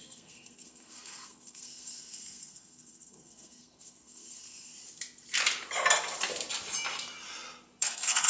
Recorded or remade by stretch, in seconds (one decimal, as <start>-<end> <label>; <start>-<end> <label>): 0.0-4.7 remade; 4.7-7.8 recorded; 7.8-8.3 remade